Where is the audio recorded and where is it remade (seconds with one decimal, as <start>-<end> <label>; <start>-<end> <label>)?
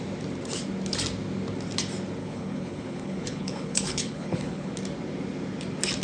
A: 0.0-2.2 recorded; 2.2-4.7 remade; 4.7-6.0 recorded